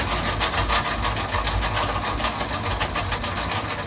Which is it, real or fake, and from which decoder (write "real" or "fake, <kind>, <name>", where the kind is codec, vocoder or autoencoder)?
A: real